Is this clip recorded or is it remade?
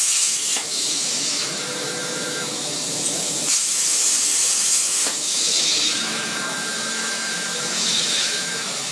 remade